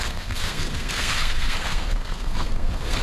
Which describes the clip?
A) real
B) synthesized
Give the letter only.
B